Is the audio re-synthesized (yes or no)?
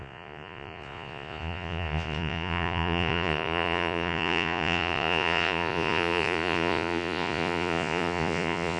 yes